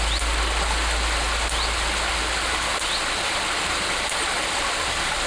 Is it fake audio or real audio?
real